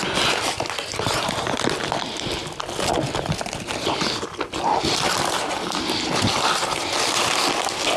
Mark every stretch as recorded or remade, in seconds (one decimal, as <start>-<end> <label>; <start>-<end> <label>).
0.0-8.0 recorded